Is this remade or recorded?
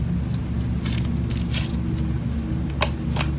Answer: recorded